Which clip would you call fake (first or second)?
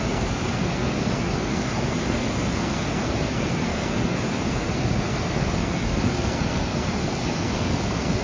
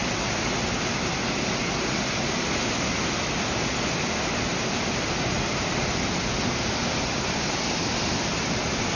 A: first